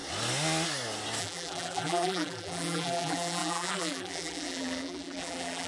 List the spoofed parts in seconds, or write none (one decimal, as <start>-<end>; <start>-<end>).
1.2-5.7